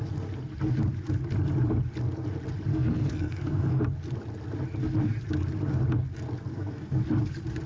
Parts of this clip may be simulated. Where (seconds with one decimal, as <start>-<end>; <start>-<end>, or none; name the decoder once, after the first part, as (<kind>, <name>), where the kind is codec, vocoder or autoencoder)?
2.7-3.8 (codec, SNAC); 6.5-7.0